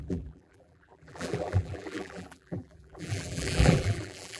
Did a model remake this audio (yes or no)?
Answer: yes